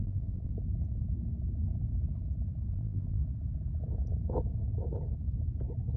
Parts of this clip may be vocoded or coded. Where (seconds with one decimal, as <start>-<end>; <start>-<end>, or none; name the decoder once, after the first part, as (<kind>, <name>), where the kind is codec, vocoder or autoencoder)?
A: 0.0-0.5 (vocoder, BigVGAN v2); 2.7-3.2